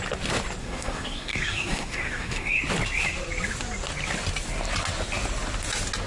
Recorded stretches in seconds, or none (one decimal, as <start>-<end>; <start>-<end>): 0.0-0.6; 2.6-6.1